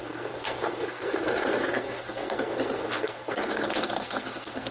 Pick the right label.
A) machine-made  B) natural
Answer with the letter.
A